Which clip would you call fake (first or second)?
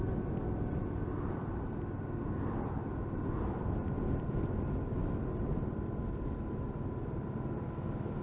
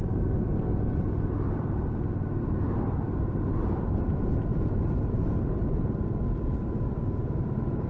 second